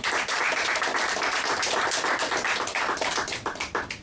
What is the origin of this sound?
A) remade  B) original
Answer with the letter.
A